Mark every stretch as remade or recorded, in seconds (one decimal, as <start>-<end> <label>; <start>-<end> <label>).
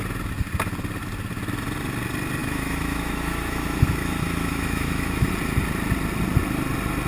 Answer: 0.0-2.4 recorded; 2.4-5.3 remade; 5.3-7.1 recorded